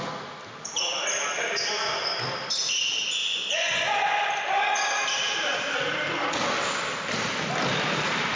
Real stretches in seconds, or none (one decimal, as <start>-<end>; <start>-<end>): 0.0-3.2; 4.3-8.3

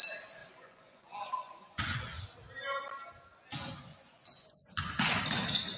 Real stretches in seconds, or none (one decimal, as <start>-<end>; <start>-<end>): 0.0-0.4; 2.2-3.9; 5.2-5.8

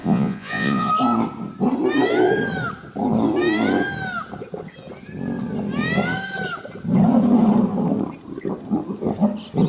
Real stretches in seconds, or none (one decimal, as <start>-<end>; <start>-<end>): 0.9-9.7

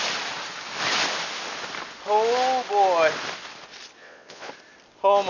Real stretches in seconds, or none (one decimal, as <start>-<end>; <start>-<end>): 0.0-4.0; 4.5-5.3

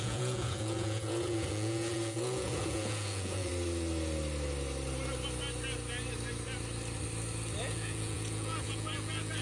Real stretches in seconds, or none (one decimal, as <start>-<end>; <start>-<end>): 3.5-7.6